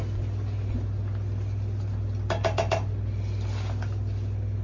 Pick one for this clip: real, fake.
real